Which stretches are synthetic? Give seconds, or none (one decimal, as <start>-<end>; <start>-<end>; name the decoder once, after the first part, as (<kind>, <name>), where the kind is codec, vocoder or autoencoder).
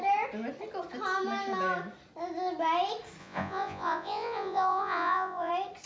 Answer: 3.2-5.5 (vocoder, Vocos)